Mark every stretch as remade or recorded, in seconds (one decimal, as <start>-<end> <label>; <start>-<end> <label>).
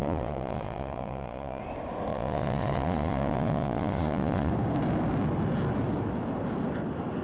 0.0-1.6 remade; 1.6-2.1 recorded; 2.1-4.5 remade; 4.5-7.2 recorded